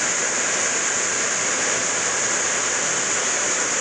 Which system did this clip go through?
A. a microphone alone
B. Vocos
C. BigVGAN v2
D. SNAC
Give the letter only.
A